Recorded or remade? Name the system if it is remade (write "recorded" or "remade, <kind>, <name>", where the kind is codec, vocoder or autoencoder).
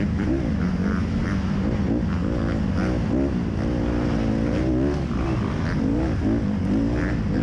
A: recorded